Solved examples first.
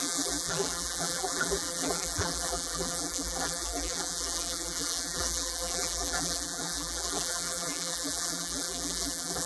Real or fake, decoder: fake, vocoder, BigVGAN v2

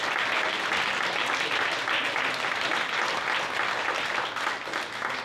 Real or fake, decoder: real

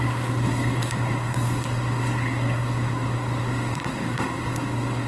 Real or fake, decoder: fake, codec, SNAC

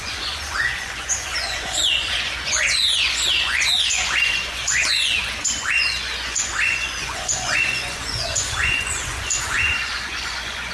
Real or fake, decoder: fake, vocoder, Vocos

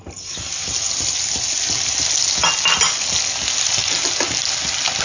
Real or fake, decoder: real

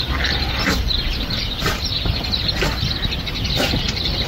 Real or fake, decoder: real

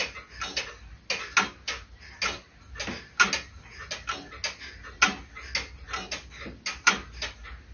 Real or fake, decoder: real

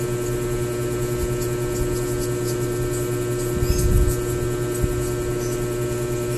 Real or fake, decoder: real